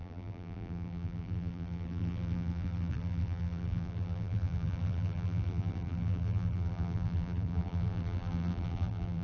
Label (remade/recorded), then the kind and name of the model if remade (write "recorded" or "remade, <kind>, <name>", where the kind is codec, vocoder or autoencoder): remade, vocoder, BigVGAN v2